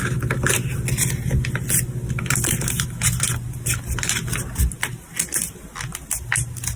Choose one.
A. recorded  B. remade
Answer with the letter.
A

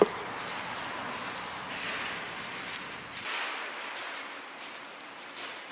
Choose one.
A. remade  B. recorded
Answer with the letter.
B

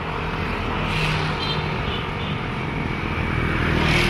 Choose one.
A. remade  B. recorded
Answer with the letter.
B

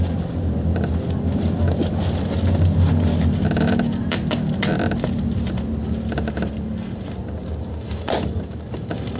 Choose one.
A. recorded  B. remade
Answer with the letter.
B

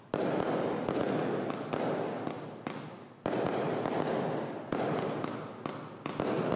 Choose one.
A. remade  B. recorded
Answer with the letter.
B